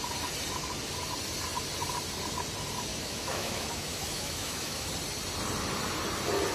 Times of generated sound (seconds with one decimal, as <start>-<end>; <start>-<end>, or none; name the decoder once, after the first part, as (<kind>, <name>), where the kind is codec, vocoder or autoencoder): 2.9-4.9 (autoencoder, DAC-VAE)